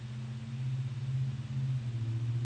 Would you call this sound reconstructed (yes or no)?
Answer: no